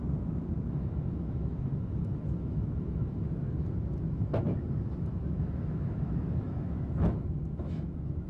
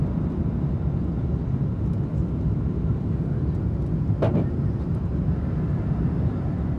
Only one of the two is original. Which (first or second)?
second